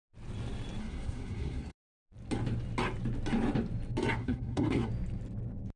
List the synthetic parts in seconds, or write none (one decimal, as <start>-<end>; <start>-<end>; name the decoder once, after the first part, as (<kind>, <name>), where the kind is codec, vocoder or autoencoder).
0.8-2.0 (codec, SNAC); 4.2-4.9